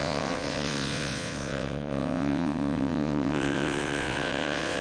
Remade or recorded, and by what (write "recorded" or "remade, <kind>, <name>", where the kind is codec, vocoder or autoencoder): remade, vocoder, WaveNeXt